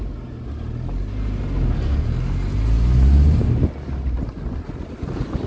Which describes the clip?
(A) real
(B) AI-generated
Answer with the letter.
A